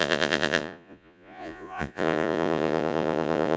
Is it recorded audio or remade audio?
remade